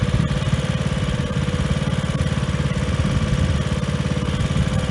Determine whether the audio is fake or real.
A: real